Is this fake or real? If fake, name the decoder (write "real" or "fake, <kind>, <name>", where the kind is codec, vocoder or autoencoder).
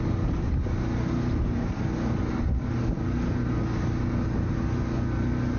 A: real